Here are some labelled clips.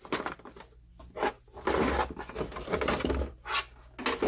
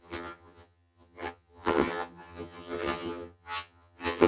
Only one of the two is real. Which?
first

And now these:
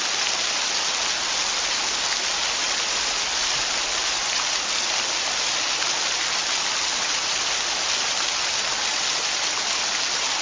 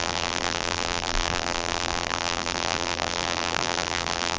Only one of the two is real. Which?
first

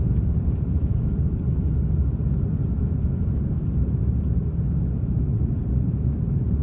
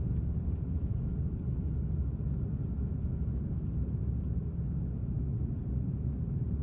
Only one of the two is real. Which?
second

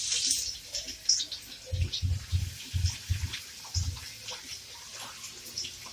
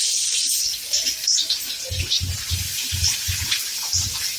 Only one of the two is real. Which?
first